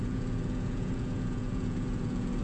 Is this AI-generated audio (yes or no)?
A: yes